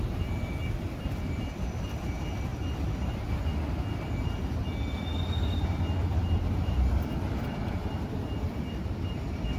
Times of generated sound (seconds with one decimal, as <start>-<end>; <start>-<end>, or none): 0.0-2.5; 3.1-3.5; 5.4-9.6